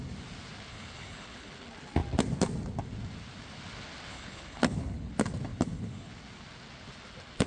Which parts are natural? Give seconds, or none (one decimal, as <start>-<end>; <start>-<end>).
0.0-0.7; 1.5-4.1; 5.1-5.5; 6.1-7.5